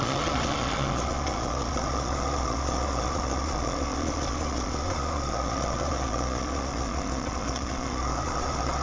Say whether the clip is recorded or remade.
remade